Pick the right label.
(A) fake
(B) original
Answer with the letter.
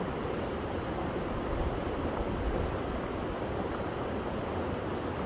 B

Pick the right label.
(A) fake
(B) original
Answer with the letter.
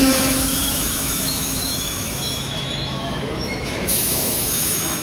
A